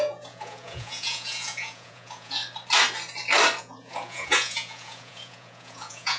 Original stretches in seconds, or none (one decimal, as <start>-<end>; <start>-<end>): 2.4-3.6

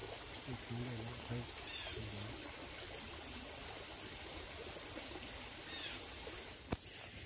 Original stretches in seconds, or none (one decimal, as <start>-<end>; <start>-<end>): 0.0-7.3

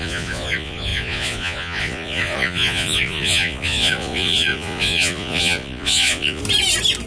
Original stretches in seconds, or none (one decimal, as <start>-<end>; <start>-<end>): 6.4-7.1

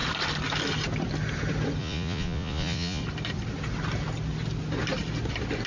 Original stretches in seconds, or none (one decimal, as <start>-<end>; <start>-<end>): 0.0-1.8; 3.0-5.7

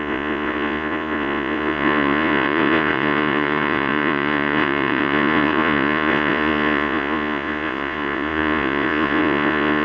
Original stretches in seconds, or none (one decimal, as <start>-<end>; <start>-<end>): none

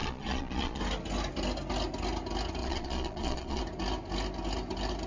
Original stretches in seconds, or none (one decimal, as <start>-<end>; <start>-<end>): 0.8-2.6; 3.6-5.1